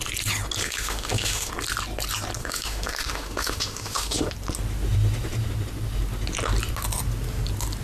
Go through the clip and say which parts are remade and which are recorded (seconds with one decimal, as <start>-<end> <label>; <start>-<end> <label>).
0.0-0.6 recorded; 0.6-1.5 remade; 1.5-2.4 recorded; 2.4-4.3 remade; 4.3-7.8 recorded